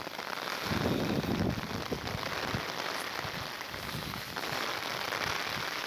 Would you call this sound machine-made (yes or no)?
no